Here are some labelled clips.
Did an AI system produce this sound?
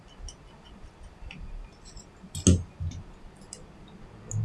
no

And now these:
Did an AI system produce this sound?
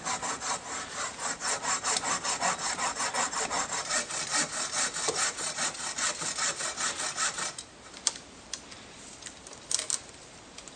no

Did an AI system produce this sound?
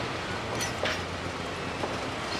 no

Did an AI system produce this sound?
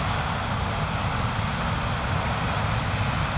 no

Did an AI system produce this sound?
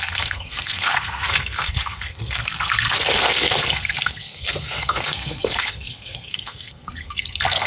yes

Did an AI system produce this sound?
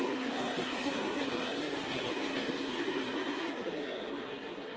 yes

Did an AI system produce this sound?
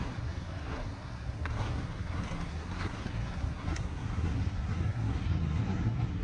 yes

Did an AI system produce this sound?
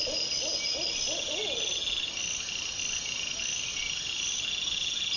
no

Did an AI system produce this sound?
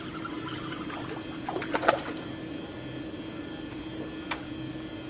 no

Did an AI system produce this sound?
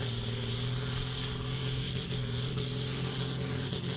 no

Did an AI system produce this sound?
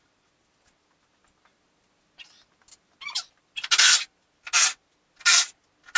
no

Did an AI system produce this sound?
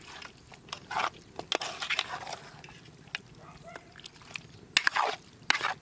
no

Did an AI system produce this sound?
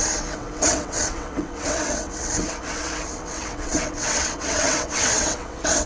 yes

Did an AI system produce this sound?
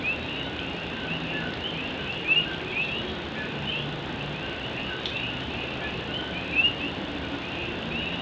no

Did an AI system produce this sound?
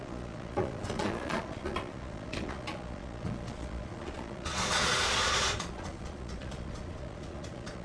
yes